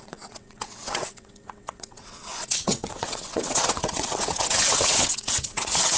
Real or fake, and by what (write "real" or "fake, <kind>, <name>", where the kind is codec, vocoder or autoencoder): fake, vocoder, WaveNeXt